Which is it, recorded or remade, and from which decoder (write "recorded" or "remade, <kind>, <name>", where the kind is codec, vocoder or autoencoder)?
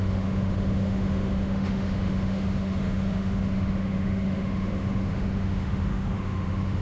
remade, autoencoder, DAC-VAE